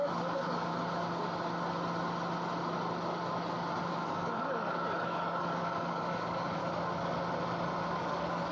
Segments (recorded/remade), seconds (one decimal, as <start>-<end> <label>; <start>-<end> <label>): 0.0-0.7 remade; 0.7-3.9 recorded; 3.9-6.6 remade; 6.6-8.0 recorded; 8.0-8.5 remade